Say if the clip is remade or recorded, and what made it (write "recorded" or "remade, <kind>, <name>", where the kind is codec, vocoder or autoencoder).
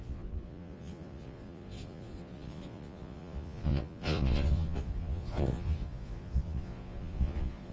remade, vocoder, Vocos